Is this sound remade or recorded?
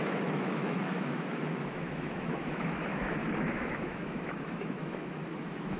remade